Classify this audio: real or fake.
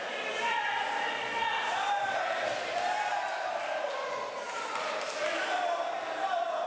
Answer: fake